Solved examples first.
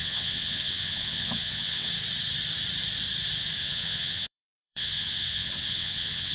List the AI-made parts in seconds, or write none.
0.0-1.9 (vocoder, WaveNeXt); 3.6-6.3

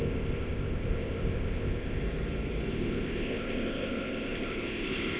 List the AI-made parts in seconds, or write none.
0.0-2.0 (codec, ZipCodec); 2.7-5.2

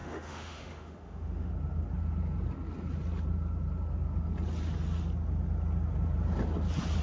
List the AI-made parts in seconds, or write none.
0.0-1.5 (autoencoder, DAC-VAE)